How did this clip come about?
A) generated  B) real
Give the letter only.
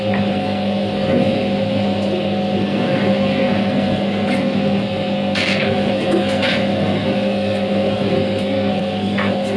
A